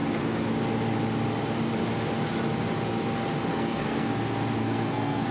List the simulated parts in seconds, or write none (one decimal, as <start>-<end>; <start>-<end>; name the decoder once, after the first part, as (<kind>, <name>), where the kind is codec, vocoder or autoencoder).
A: 3.5-4.1 (codec, SNAC); 4.6-5.3